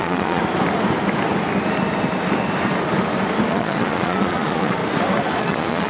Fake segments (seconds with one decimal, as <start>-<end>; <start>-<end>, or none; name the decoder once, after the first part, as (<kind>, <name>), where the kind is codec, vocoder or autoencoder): 0.0-0.4 (vocoder, Vocos); 3.5-4.8; 5.4-5.9